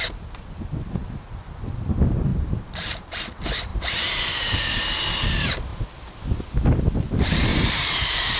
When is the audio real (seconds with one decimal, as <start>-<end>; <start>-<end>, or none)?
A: 0.0-2.3; 3.2-3.7; 4.8-7.5